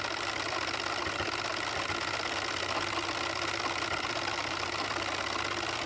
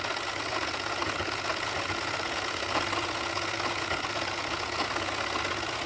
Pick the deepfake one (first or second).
second